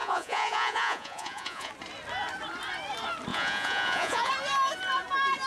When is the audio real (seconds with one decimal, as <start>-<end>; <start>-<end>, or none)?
1.7-3.3; 4.3-5.5